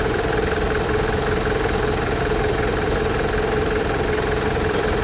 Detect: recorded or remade remade